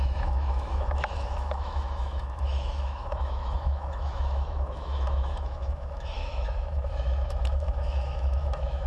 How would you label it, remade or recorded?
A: remade